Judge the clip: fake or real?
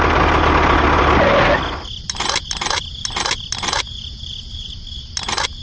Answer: real